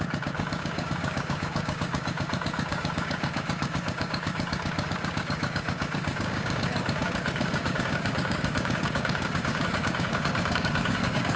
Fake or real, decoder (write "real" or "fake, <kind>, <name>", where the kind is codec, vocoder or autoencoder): fake, codec, DAC